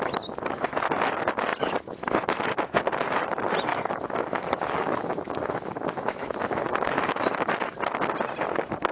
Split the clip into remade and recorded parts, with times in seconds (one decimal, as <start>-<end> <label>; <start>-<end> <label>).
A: 0.0-1.5 recorded; 1.5-2.4 remade; 2.4-3.7 recorded; 3.7-7.5 remade; 7.5-8.9 recorded